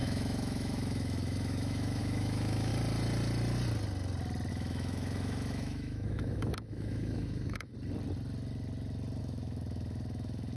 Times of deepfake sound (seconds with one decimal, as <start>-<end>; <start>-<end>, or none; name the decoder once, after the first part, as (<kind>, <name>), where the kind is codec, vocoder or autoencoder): 0.0-2.7 (autoencoder, DAC-VAE); 4.5-7.7; 9.2-10.6